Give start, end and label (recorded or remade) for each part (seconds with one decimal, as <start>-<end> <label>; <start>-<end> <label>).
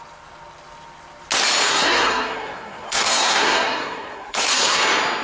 0.0-1.7 recorded; 1.7-4.8 remade; 4.8-5.2 recorded